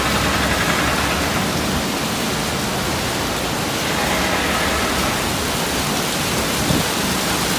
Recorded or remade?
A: recorded